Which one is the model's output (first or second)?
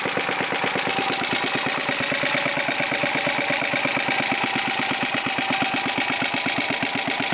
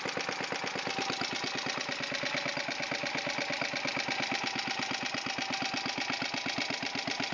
first